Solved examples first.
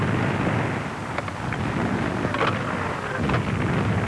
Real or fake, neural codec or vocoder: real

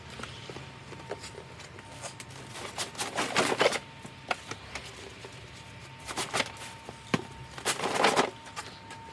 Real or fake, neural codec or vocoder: real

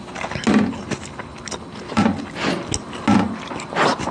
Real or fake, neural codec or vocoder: real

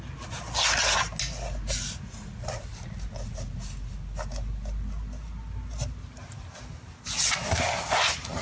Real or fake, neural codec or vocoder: real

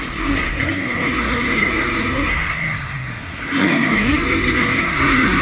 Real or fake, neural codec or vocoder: fake, codec, SNAC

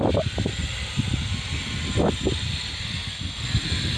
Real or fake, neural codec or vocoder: fake, vocoder, BigVGAN v2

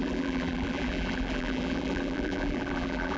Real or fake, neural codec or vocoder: fake, vocoder, BigVGAN v2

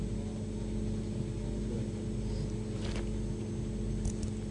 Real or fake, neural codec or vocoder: real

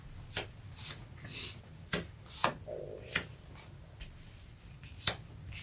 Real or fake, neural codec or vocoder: real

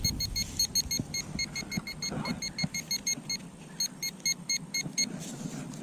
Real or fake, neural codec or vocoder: real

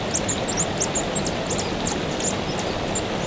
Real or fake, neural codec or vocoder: real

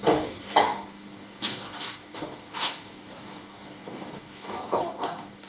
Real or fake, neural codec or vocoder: fake, codec, DAC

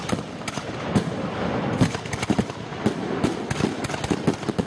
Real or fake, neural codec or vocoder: real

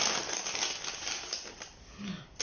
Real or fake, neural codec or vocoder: real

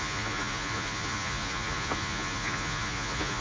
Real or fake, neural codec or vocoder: fake, vocoder, Vocos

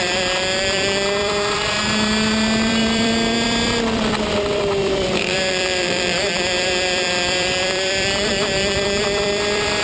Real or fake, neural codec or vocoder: fake, vocoder, BigVGAN v2